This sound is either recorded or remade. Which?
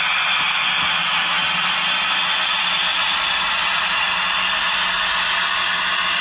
recorded